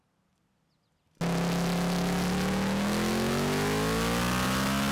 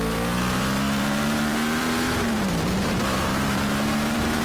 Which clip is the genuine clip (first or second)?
first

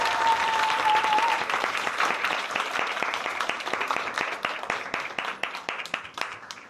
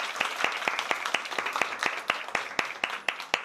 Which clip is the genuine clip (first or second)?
second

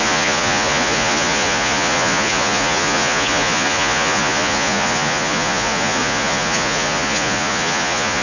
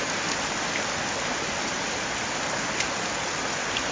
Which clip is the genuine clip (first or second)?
second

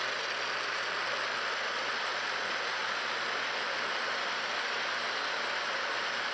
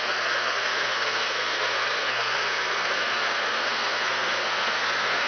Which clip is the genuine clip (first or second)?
first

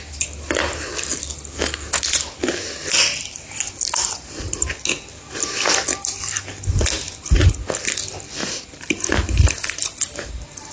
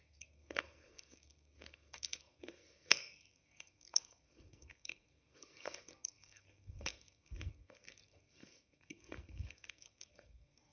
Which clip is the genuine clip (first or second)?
first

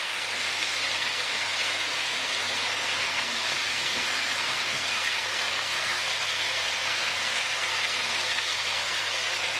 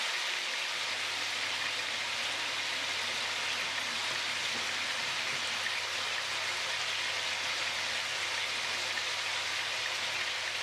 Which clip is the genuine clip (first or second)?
second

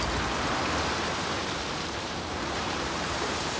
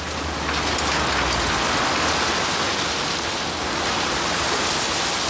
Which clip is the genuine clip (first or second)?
second